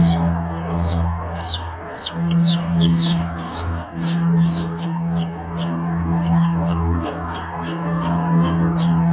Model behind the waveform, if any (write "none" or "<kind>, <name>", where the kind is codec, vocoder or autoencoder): codec, DAC